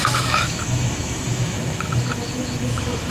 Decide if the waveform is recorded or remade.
remade